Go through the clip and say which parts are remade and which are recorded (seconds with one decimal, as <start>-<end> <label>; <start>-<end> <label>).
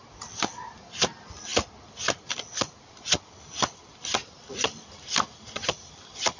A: 0.0-6.4 recorded